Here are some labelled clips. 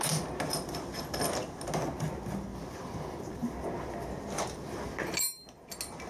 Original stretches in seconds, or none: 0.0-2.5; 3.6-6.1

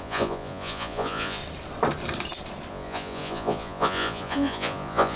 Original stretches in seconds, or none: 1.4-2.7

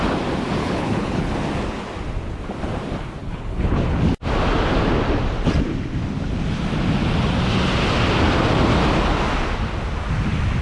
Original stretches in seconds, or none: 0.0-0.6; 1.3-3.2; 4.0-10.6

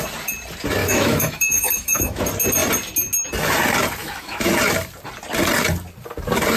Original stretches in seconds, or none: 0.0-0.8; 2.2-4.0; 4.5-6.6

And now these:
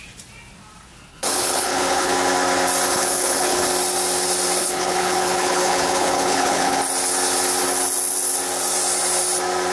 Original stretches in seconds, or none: 0.0-1.1; 2.1-2.9; 3.7-4.6; 6.8-9.7

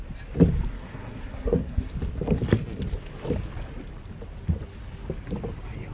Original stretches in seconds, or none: 0.0-0.7; 1.9-5.9

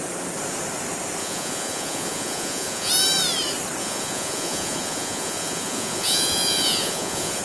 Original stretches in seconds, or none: 0.0-1.2; 2.9-3.8

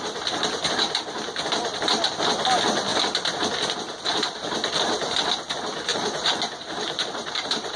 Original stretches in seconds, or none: 0.0-4.1; 5.3-5.9